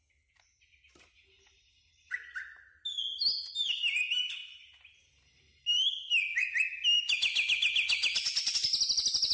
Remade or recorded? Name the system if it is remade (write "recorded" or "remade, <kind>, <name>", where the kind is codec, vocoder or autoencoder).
recorded